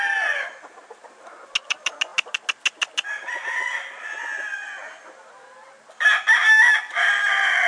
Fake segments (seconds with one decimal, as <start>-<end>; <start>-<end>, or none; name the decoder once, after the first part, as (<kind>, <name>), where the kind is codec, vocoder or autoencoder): none